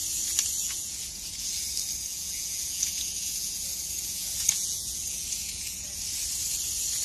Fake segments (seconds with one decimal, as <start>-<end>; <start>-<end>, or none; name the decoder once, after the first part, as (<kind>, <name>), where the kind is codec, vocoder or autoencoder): 0.6-1.6 (vocoder, Vocos); 2.1-6.0